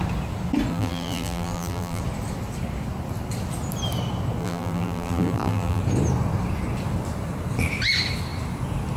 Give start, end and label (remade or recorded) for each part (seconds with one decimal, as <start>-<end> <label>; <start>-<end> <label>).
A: 0.0-0.7 recorded; 0.7-2.0 remade; 2.0-4.4 recorded; 4.4-5.8 remade; 5.8-9.0 recorded